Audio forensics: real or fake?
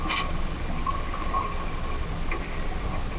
real